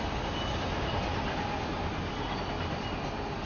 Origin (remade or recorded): recorded